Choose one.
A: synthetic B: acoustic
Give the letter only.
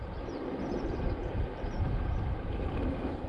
A